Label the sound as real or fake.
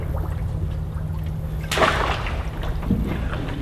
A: real